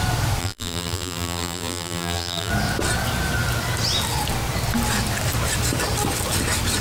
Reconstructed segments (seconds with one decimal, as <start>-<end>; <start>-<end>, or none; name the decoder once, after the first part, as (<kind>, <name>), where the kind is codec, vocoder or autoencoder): 0.4-2.5 (vocoder, BigVGAN v2)